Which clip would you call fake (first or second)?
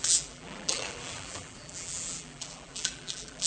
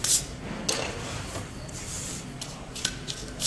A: first